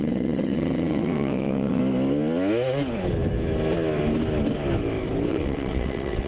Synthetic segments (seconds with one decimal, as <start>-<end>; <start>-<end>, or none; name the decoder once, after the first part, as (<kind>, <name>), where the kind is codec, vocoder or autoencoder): 0.0-1.8 (vocoder, WaveNeXt); 5.3-6.3